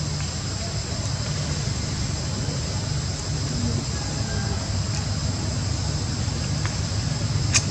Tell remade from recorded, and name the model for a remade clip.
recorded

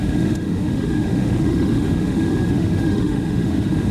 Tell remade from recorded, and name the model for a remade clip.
remade, autoencoder, DAC-VAE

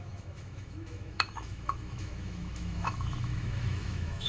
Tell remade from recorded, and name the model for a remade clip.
remade, autoencoder, DAC-VAE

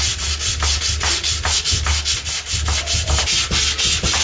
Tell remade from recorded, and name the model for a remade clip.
recorded